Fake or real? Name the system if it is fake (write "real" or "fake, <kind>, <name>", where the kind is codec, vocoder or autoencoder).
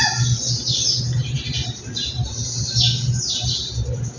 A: real